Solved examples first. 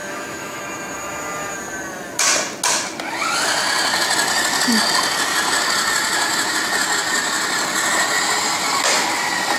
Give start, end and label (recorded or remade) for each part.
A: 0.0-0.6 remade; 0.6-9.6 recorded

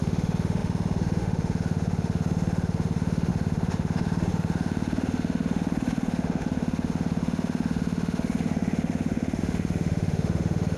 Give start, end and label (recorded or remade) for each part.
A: 0.0-10.8 remade

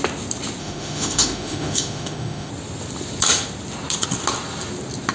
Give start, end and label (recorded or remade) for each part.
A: 0.0-0.6 recorded; 0.6-2.5 remade; 2.5-5.1 recorded

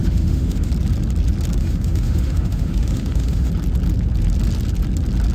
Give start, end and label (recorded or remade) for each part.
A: 0.0-0.7 remade; 0.7-1.6 recorded; 1.6-3.5 remade; 3.5-5.3 recorded

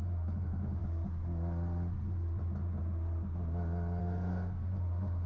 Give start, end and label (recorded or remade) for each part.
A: 0.0-0.8 remade; 0.8-4.0 recorded; 4.0-5.3 remade

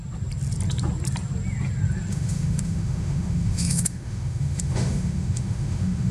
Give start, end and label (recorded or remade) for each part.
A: 0.0-2.1 recorded; 2.1-6.1 remade